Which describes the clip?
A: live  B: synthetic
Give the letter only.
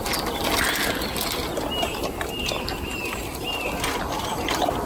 A